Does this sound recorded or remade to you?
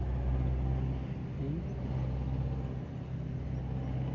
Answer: recorded